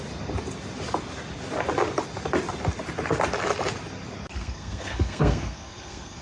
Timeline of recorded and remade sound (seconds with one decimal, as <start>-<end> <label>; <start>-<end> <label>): 0.0-4.3 recorded; 4.3-6.2 remade